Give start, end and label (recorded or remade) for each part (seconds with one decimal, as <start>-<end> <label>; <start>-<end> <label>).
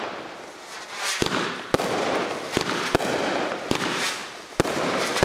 0.0-5.2 recorded